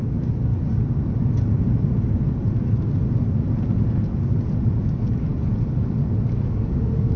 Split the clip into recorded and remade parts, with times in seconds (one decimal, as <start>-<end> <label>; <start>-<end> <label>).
0.0-0.5 remade; 0.5-4.8 recorded; 4.8-5.3 remade; 5.3-6.3 recorded; 6.3-7.2 remade